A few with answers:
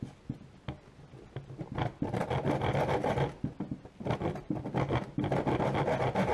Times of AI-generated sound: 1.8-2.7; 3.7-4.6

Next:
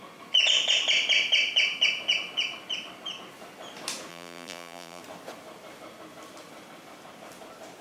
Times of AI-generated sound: 4.1-5.0

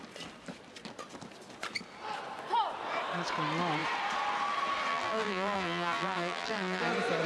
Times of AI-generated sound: 4.9-6.8

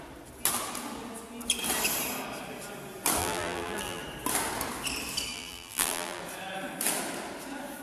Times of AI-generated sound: 3.2-4.0; 5.3-6.2

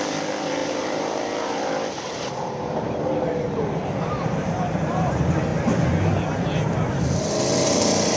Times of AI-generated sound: 0.6-5.1

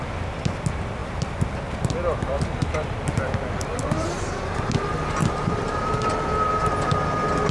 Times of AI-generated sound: 5.2-5.9

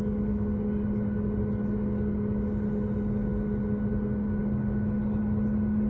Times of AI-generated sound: none